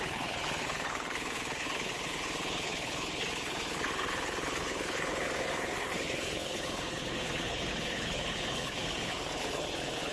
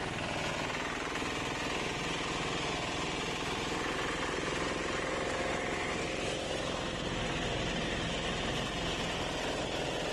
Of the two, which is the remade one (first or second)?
first